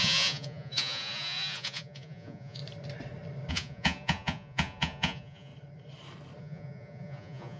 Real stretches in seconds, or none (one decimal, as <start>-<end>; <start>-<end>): 2.6-3.5; 5.5-6.4